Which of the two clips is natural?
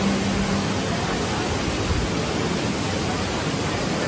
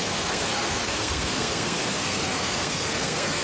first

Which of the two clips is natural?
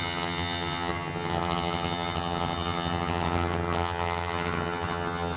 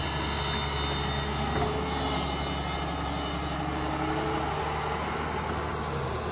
second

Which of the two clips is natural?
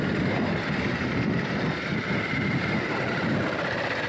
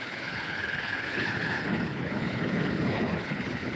first